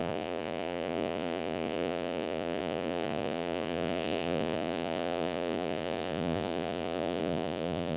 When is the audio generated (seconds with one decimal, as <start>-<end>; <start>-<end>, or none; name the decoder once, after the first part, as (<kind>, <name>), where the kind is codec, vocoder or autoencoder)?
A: 0.0-8.0 (vocoder, Vocos)